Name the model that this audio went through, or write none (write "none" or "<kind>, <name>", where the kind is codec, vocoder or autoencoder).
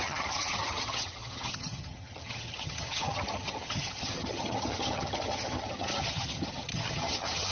vocoder, HiFi-GAN